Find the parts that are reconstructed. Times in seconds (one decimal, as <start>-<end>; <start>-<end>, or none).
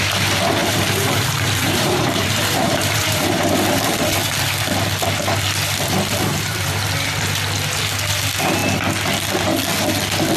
0.6-4.3; 6.3-6.8